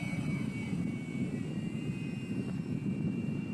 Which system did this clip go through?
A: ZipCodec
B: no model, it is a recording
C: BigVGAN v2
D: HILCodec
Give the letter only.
C